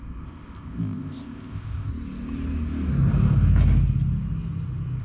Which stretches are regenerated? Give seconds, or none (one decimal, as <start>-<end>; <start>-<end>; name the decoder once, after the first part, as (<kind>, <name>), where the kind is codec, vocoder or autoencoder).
0.0-1.9 (codec, ZipCodec)